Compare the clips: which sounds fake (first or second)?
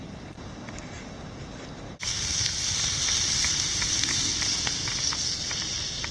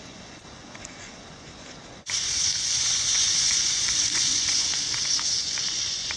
second